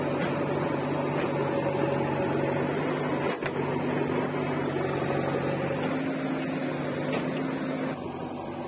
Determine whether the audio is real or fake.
real